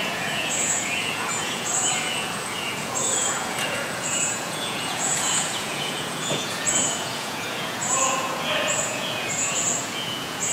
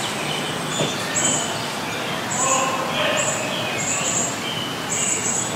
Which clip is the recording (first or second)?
second